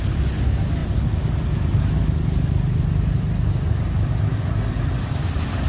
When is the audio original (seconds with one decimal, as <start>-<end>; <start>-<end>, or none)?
0.0-5.7